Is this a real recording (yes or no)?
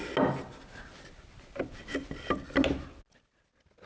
yes